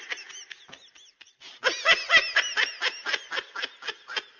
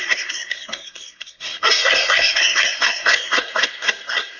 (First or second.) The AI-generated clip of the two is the second